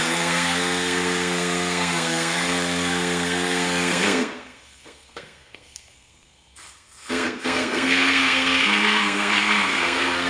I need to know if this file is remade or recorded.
remade